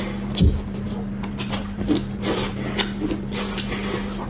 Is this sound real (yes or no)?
yes